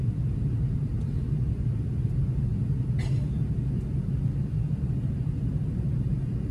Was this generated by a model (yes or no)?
no